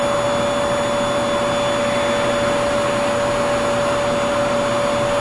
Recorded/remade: recorded